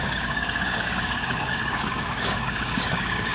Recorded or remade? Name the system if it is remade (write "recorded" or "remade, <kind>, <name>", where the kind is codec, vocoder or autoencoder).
remade, codec, DAC